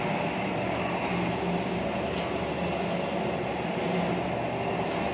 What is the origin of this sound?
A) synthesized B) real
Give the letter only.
B